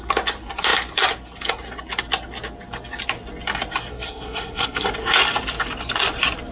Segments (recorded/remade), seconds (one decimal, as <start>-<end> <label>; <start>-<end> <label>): 0.0-3.9 recorded; 3.9-4.9 remade; 4.9-6.5 recorded